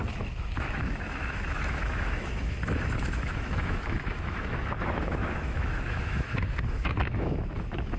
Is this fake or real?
fake